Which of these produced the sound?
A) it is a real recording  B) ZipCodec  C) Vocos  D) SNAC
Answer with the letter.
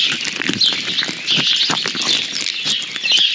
A